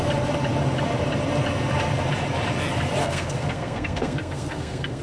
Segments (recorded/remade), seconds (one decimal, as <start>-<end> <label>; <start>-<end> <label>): 0.0-3.0 recorded; 3.0-5.0 remade